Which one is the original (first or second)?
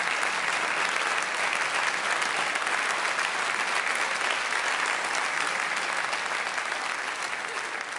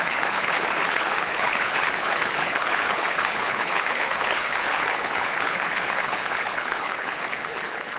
first